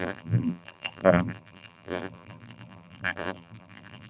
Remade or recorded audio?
remade